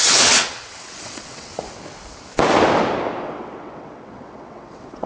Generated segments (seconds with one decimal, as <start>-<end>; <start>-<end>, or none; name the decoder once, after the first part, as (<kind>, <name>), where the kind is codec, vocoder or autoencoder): 0.0-1.5 (vocoder, WaveNeXt); 3.2-5.1